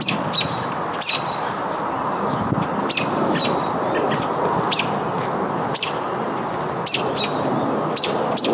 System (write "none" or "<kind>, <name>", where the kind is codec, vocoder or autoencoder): none